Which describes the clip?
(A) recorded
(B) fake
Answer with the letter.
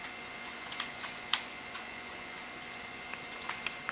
B